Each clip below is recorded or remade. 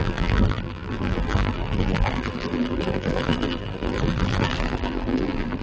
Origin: remade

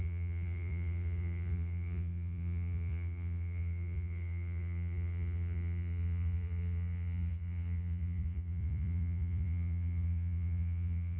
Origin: remade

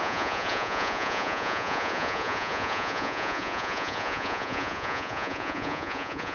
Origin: remade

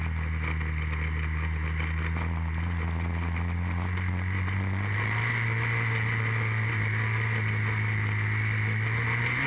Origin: recorded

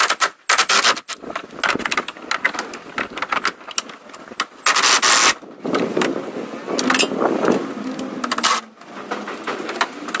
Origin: recorded